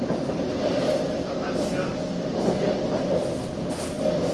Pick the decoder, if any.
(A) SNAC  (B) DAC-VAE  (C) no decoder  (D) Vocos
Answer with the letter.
C